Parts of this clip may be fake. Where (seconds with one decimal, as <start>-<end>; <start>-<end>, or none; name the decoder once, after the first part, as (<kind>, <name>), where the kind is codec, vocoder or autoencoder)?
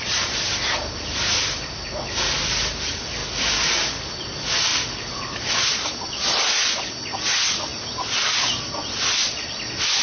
none